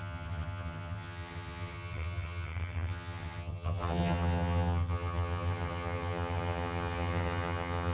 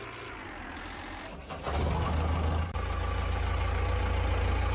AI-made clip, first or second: first